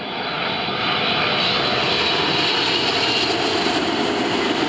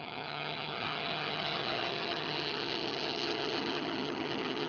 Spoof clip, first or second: second